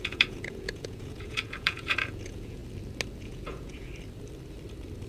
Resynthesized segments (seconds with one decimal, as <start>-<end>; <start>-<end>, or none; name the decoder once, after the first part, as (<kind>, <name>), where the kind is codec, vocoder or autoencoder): 0.0-2.6 (vocoder, Vocos); 3.2-3.9